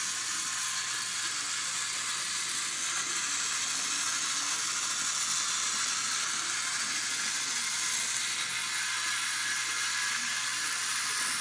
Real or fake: real